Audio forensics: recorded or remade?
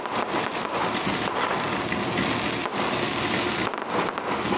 recorded